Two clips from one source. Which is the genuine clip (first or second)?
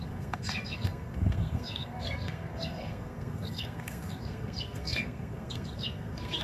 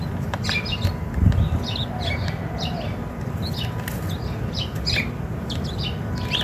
second